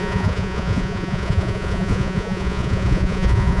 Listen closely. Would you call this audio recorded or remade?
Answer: remade